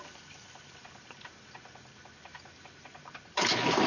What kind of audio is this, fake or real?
fake